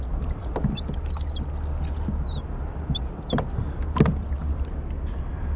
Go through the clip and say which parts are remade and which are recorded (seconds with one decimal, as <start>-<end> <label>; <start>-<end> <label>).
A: 0.0-5.6 recorded